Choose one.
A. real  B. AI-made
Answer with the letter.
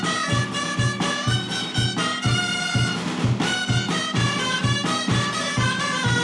A